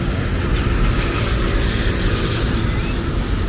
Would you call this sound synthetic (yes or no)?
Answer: no